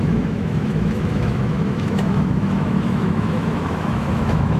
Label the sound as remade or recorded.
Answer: remade